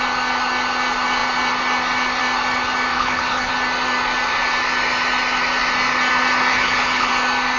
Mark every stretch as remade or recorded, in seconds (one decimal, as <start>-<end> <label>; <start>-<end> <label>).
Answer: 0.0-2.9 recorded; 2.9-3.5 remade; 3.5-6.5 recorded; 6.5-7.1 remade; 7.1-7.6 recorded